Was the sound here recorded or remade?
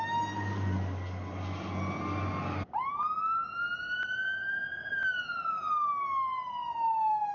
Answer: recorded